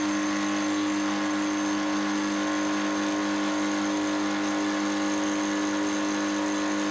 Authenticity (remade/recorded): recorded